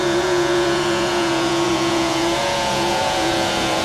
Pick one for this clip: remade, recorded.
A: remade